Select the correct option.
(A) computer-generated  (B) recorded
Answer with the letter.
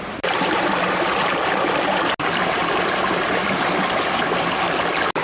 B